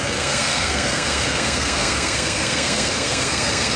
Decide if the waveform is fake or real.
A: fake